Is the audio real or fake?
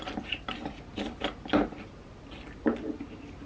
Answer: real